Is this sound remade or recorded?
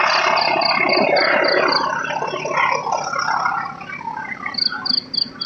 recorded